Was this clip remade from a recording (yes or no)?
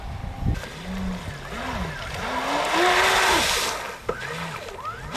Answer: no